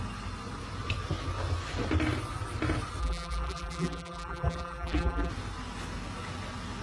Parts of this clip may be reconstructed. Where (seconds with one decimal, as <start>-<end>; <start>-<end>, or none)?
3.0-5.3